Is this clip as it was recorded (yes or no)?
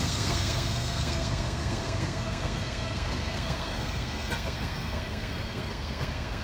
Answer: no